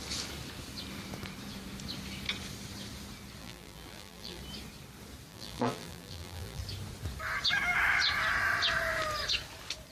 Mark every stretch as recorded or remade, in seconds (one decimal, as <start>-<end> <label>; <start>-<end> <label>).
0.0-3.4 recorded; 3.4-4.4 remade; 4.4-5.3 recorded; 5.3-6.6 remade; 6.6-9.9 recorded